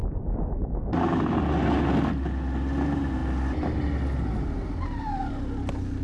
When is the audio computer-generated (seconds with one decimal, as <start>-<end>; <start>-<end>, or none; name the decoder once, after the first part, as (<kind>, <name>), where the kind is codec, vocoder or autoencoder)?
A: none